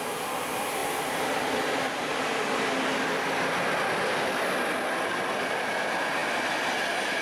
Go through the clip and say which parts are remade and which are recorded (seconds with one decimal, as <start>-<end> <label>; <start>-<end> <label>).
0.0-7.2 recorded